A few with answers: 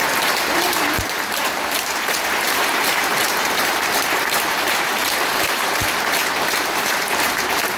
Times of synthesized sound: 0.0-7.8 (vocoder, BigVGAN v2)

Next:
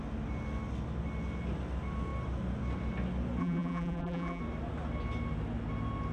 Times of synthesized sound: 3.4-4.4 (vocoder, BigVGAN v2)

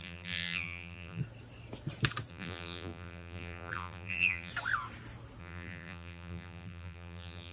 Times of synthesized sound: 0.0-1.2 (vocoder, BigVGAN v2); 2.3-4.5; 5.4-7.5